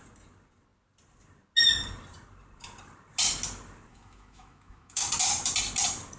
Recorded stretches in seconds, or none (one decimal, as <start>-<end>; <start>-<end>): 0.0-3.9; 5.1-6.2

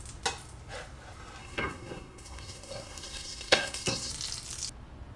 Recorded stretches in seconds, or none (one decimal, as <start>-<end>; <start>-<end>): 0.0-1.4; 4.1-5.2

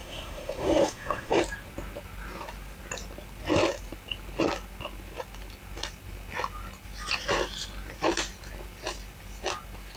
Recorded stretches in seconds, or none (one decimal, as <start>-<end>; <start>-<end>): 1.4-10.0

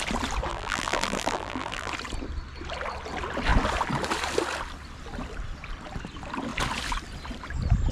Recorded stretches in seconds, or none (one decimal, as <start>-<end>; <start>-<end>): 0.0-0.5; 1.9-7.9